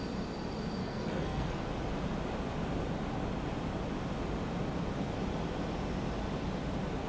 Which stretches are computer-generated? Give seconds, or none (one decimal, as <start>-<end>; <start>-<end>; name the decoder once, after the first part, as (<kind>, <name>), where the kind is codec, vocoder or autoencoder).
0.8-1.6 (codec, SNAC)